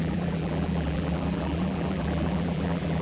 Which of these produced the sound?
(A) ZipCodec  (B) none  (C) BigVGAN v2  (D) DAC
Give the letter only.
C